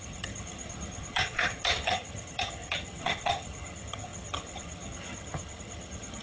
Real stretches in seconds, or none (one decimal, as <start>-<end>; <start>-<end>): none